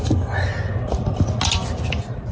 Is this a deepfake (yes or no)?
no